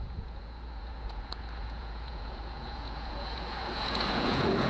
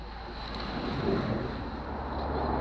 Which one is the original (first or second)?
second